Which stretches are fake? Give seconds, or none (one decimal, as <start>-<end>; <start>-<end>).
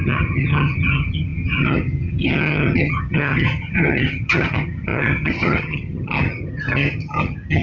0.0-7.6